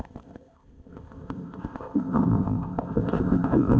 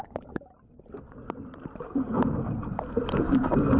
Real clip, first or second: second